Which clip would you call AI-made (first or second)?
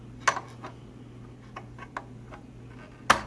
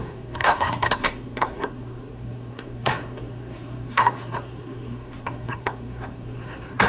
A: second